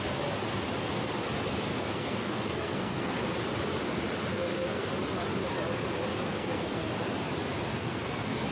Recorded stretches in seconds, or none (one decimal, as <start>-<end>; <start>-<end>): 0.0-1.7; 3.2-4.3; 4.9-6.1; 6.9-7.7